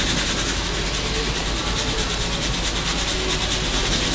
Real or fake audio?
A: real